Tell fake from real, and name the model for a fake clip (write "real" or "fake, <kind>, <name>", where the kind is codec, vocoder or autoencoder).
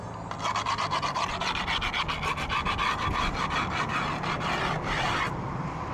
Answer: real